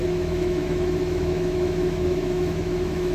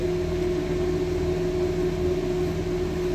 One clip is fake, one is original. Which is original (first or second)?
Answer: second